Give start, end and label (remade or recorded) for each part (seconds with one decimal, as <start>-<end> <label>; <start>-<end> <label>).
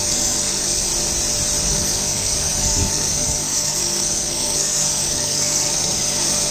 0.0-0.9 remade; 0.9-1.6 recorded; 1.6-6.5 remade